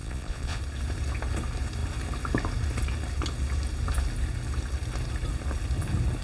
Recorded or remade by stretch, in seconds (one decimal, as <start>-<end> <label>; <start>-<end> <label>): 0.0-0.6 remade; 0.6-6.2 recorded